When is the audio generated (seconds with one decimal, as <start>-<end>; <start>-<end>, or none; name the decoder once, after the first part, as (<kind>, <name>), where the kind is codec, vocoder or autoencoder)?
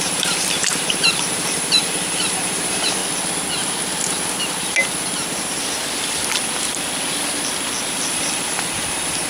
0.0-3.0 (vocoder, BigVGAN v2); 8.1-9.3